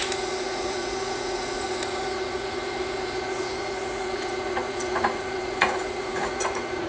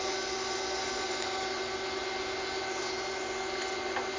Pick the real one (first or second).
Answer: second